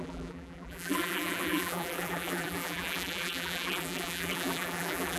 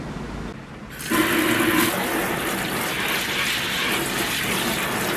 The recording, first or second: second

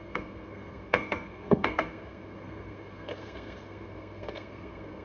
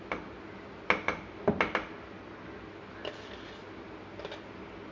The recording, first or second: second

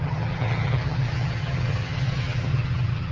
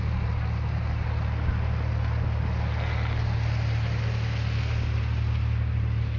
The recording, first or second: second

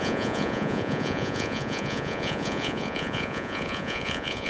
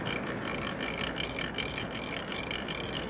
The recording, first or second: second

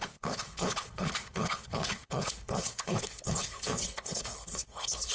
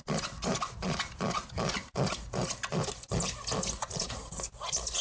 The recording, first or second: second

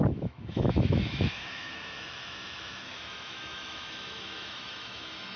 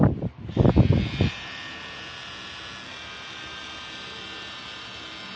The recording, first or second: second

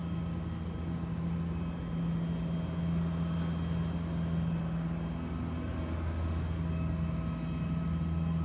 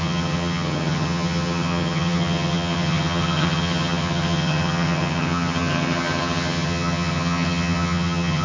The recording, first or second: first